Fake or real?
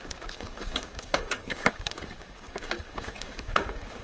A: fake